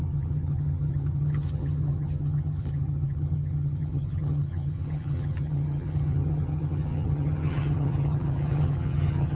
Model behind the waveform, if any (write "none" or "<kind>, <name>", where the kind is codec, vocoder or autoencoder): vocoder, HiFi-GAN